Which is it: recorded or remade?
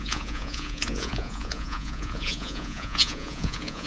remade